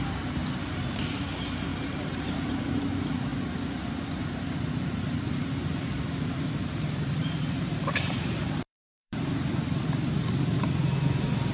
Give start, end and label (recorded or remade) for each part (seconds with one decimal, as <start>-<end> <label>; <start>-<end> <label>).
0.0-1.7 recorded; 1.7-2.8 remade; 2.8-6.6 recorded; 6.6-9.4 remade; 9.4-11.5 recorded